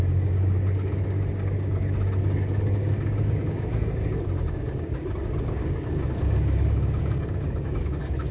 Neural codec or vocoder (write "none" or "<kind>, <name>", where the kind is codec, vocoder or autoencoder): codec, DAC